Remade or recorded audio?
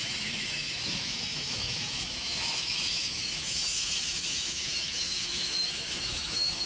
remade